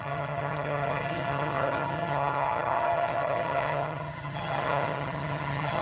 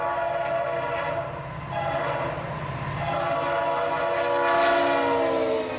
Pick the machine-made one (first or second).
first